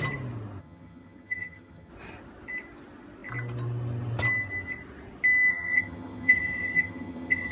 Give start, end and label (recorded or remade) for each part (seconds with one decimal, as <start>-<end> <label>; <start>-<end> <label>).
0.0-0.6 recorded; 0.6-1.9 remade; 1.9-5.5 recorded; 5.5-7.5 remade